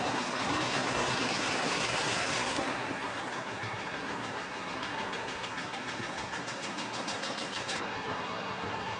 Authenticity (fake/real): fake